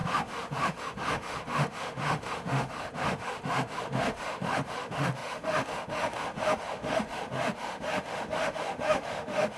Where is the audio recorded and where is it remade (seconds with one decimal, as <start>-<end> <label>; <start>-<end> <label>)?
0.0-9.6 remade